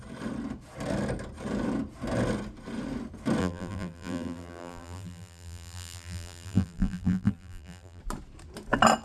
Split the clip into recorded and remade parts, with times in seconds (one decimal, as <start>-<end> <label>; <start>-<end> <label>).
0.0-3.4 recorded; 3.4-8.0 remade; 8.0-9.0 recorded